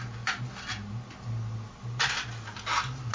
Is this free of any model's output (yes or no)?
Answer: yes